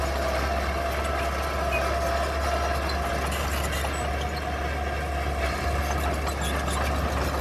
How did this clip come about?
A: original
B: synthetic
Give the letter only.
A